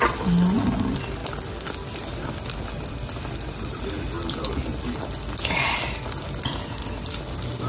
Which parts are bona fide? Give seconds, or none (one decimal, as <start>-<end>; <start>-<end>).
0.0-7.7